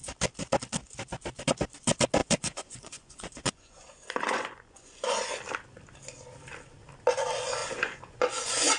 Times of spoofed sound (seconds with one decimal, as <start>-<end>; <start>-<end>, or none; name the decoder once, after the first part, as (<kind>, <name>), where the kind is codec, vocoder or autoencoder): 2.2-5.4 (vocoder, Vocos); 7.6-8.8